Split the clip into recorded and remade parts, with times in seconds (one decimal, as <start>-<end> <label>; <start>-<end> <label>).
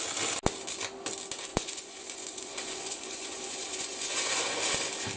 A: 0.0-1.5 recorded; 1.5-4.6 remade; 4.6-5.2 recorded